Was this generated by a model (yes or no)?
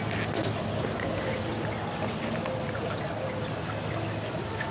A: no